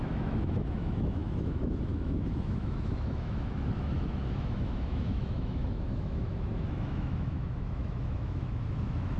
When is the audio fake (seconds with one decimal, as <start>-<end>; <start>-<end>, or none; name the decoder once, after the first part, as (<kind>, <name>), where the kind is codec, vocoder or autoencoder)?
0.0-9.2 (autoencoder, DAC-VAE)